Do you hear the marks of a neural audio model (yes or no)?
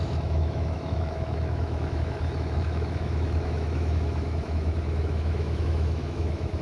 yes